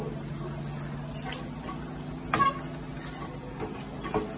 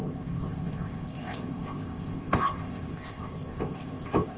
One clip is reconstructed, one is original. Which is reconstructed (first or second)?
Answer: second